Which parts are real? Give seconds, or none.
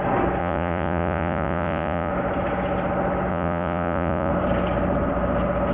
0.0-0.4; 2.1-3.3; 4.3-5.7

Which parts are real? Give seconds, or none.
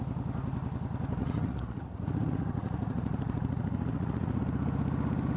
0.0-1.2; 4.4-5.4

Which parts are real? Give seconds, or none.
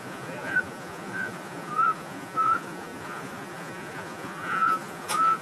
none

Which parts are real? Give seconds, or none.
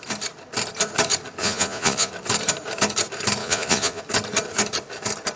0.0-1.4; 2.1-3.4; 4.0-5.4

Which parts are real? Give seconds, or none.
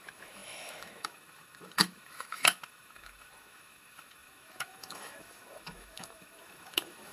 none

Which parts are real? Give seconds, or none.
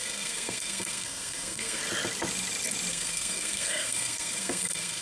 1.8-2.9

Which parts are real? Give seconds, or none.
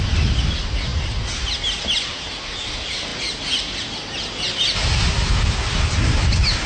0.0-6.7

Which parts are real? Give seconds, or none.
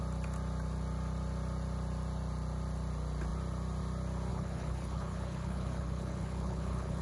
0.0-4.3